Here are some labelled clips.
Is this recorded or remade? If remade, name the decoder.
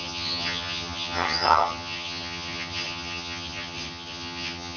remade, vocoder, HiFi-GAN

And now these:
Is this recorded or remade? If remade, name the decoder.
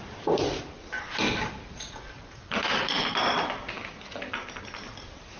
recorded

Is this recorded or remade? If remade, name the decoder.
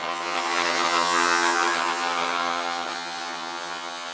remade, vocoder, HiFi-GAN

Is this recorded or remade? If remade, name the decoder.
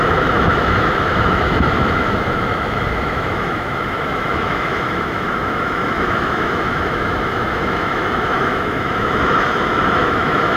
remade, autoencoder, DAC-VAE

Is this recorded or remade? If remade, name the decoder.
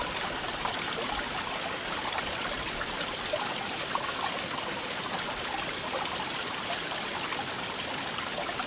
recorded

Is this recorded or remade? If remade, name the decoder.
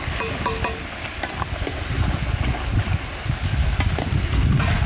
recorded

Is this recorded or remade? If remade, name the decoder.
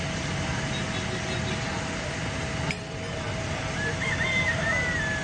recorded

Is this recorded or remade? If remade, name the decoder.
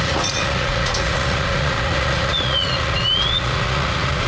remade, vocoder, Vocos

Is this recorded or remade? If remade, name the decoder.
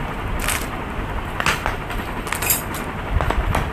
recorded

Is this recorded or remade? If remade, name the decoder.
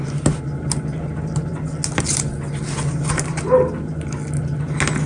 recorded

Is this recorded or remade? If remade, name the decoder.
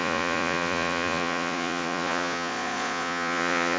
remade, vocoder, Vocos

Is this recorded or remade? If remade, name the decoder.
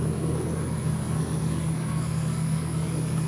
remade, codec, SNAC